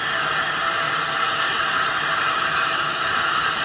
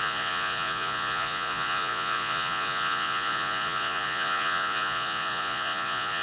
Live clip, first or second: first